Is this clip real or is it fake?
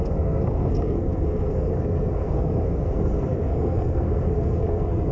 fake